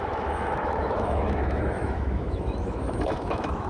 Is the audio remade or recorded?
remade